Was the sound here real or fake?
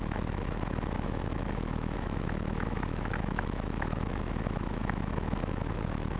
fake